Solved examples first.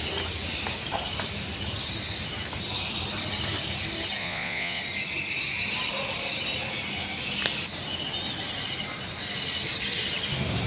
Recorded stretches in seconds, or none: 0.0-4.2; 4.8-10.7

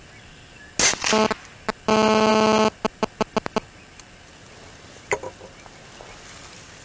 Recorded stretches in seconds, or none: 0.0-6.8

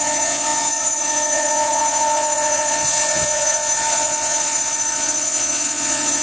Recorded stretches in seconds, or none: none

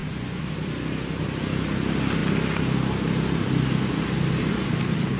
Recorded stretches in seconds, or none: 0.5-5.2

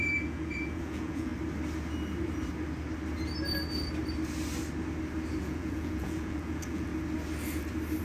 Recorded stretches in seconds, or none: 1.3-5.4; 6.9-8.0

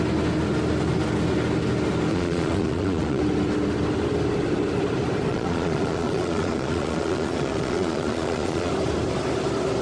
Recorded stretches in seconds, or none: 0.0-2.1; 3.2-5.3; 8.7-9.8